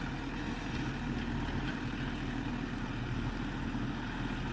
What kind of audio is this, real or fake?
real